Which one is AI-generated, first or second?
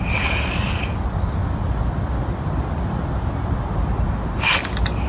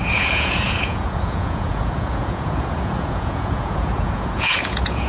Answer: second